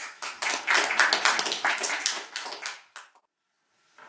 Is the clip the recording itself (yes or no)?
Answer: yes